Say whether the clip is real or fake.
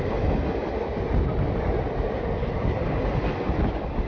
real